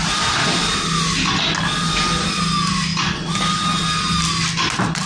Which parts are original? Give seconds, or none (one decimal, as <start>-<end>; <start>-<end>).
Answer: 0.0-5.1